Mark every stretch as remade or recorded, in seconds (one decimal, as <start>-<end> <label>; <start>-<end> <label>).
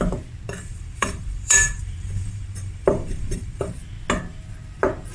0.0-0.6 recorded; 0.6-3.7 remade; 3.7-5.1 recorded